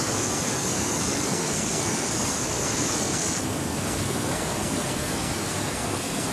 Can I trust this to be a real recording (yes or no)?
no